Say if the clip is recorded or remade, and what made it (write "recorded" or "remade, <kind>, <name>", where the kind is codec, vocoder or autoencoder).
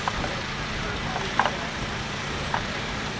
remade, vocoder, BigVGAN v2